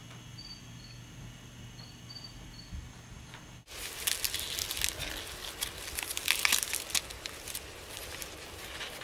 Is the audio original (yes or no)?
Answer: yes